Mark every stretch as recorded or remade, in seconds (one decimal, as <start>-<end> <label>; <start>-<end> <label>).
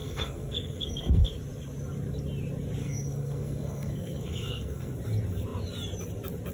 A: 0.0-1.3 remade; 1.3-2.8 recorded; 2.8-4.9 remade; 4.9-6.5 recorded